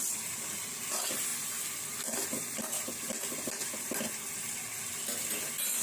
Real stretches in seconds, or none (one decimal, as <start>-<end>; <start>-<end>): 0.0-5.8